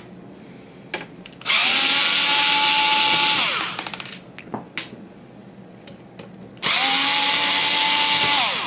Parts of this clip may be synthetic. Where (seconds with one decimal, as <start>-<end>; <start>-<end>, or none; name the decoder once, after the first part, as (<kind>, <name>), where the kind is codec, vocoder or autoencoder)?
none